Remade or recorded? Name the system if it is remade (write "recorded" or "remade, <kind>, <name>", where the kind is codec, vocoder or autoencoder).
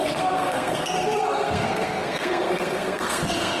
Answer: remade, codec, SNAC